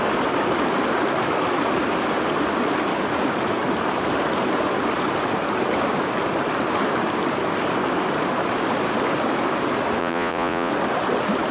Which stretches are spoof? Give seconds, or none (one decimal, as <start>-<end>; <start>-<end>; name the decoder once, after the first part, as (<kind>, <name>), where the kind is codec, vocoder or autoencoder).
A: 10.0-10.7 (vocoder, Vocos)